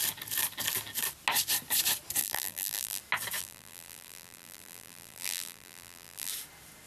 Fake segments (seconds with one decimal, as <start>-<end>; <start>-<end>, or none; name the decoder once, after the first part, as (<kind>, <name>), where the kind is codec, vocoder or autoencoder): 2.2-3.0 (vocoder, BigVGAN v2); 3.4-6.3